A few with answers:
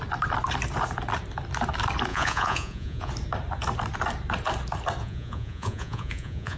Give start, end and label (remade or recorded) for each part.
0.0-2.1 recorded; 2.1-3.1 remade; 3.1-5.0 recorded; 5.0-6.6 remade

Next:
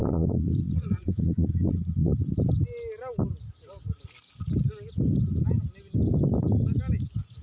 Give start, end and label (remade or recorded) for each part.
0.0-2.1 remade; 2.1-7.4 recorded

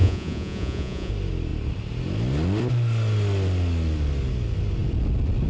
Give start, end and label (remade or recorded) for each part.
0.0-1.1 remade; 1.1-5.5 recorded

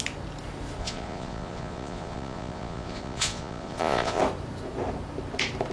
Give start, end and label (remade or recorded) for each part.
0.0-0.8 recorded; 0.8-4.2 remade; 4.2-5.7 recorded

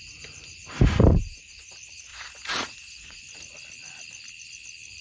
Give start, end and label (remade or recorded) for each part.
0.0-1.1 recorded; 1.1-1.7 remade; 1.7-2.1 recorded; 2.1-3.2 remade; 3.2-5.0 recorded